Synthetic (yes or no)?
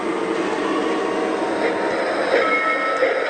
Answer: no